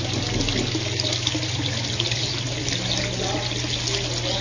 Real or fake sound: real